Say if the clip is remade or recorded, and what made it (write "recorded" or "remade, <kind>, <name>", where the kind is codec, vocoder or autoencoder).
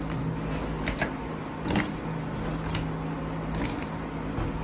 recorded